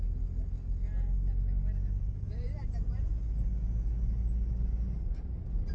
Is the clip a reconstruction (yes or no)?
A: no